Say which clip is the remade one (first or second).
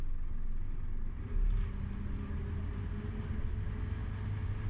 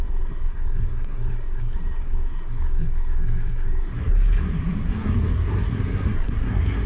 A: second